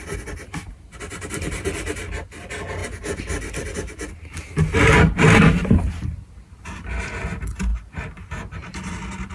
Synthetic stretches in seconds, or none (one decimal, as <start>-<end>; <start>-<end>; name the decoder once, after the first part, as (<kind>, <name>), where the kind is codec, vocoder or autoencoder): none